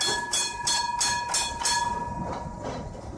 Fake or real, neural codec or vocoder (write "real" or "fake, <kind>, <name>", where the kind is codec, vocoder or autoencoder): real